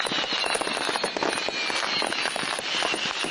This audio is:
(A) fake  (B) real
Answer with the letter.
B